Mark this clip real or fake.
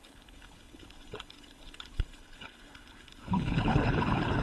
fake